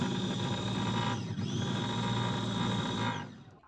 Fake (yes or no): no